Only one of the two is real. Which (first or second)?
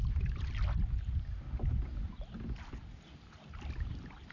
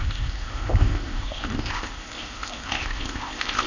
first